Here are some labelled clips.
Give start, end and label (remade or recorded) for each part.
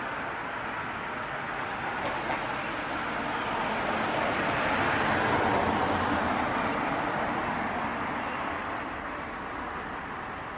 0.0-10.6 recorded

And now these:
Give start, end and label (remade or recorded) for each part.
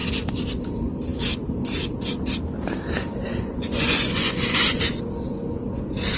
0.0-3.3 recorded; 3.3-5.0 remade; 5.0-6.2 recorded